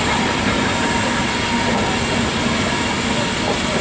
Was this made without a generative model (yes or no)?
yes